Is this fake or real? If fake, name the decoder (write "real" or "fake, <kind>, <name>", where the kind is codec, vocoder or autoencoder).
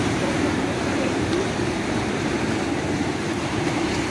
fake, vocoder, BigVGAN v2